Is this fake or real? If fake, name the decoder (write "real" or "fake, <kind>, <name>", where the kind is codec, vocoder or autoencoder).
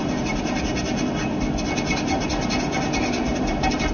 real